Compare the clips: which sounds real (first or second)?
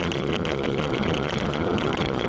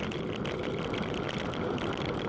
second